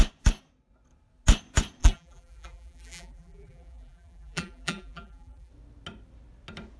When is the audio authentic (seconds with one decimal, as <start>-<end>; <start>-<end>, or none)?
0.0-1.8; 5.5-6.8